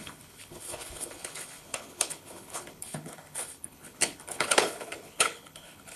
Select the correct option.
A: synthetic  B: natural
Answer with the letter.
A